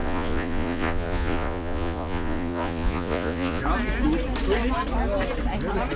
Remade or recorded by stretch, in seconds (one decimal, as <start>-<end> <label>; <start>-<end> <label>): 0.0-3.6 remade; 3.6-6.0 recorded